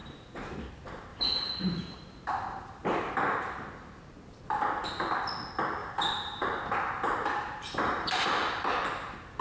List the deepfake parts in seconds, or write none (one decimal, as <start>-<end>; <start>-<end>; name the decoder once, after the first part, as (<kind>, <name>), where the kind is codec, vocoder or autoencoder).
0.0-0.7 (vocoder, BigVGAN v2); 1.1-4.4; 5.8-8.2

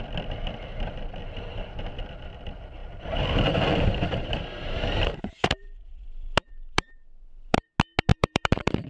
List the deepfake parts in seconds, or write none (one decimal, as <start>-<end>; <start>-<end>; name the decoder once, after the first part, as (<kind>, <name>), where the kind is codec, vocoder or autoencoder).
0.7-1.9 (vocoder, BigVGAN v2); 2.8-7.6; 8.1-8.9